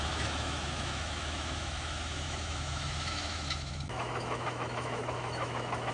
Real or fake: fake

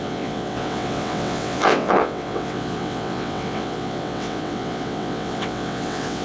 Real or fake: fake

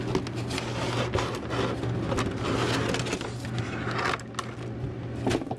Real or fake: real